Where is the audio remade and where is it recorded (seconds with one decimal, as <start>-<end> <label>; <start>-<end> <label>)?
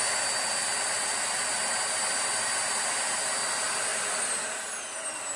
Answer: 0.0-5.4 recorded